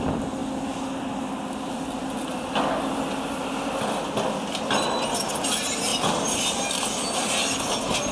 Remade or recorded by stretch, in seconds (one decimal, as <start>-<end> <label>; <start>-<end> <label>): 0.0-8.1 recorded